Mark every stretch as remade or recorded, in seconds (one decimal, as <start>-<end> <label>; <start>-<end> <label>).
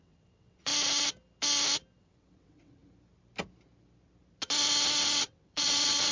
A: 0.0-0.7 remade; 0.7-2.0 recorded; 2.0-2.8 remade; 2.8-5.2 recorded; 5.2-6.1 remade